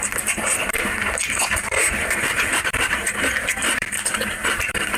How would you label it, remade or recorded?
remade